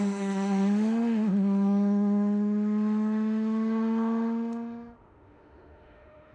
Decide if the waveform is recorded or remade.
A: remade